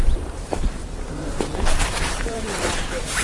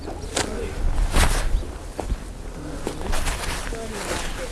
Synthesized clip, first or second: first